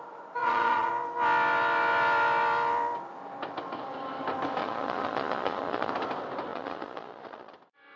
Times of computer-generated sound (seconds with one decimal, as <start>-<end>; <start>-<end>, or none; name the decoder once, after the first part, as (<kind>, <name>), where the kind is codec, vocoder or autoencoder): 0.4-0.9 (vocoder, Vocos); 4.6-5.9; 6.5-7.5